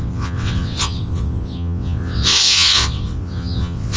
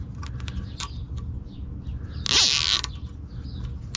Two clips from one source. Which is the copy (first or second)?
first